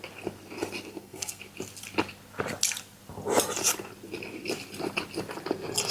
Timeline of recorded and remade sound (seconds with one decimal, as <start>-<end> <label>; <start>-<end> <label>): 0.0-0.9 recorded; 0.9-1.4 remade; 1.4-5.9 recorded